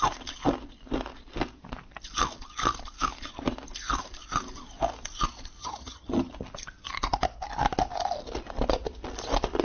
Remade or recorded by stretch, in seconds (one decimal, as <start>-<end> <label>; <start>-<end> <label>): 0.0-5.6 recorded; 5.6-6.3 remade; 6.3-9.6 recorded

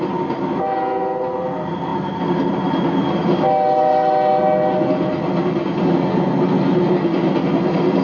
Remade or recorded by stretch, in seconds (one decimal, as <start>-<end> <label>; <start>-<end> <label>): 0.0-8.0 recorded